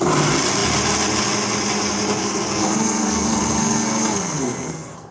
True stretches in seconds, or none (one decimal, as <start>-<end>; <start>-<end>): 0.0-2.2